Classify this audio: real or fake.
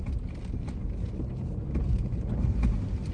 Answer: real